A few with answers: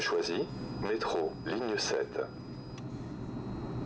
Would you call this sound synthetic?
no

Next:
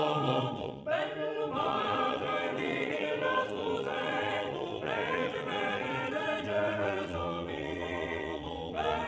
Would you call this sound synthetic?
yes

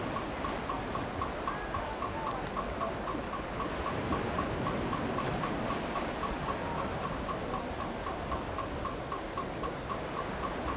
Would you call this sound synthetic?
no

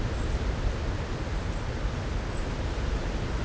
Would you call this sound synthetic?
no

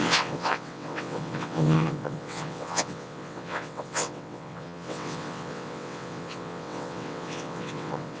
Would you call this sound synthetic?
yes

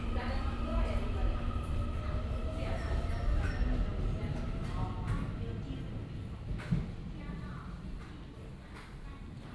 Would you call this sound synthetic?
no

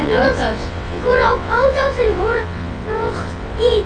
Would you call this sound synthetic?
yes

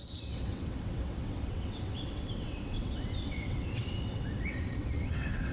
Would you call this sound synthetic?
yes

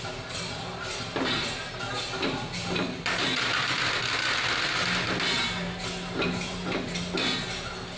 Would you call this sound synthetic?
no